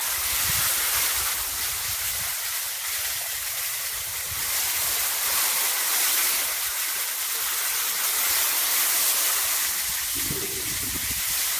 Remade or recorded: recorded